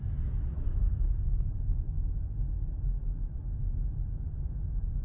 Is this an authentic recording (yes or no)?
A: yes